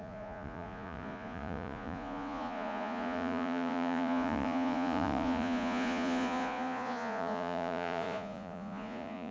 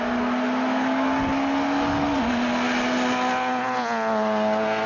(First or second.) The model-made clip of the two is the first